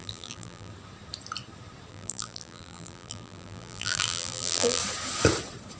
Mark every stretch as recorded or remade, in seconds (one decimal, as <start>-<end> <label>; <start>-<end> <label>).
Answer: 0.0-0.7 remade; 0.7-1.9 recorded; 1.9-4.8 remade; 4.8-5.8 recorded